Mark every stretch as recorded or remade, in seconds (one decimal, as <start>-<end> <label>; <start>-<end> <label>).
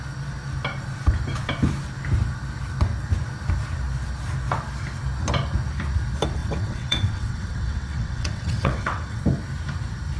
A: 0.0-6.4 recorded; 6.4-9.2 remade; 9.2-10.2 recorded